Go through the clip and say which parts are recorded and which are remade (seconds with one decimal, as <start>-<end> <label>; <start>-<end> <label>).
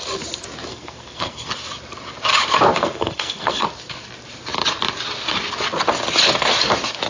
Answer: 0.0-0.7 recorded; 0.7-1.5 remade; 1.5-2.7 recorded; 2.7-3.7 remade; 3.7-7.1 recorded